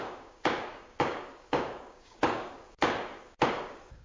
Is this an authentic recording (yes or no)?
no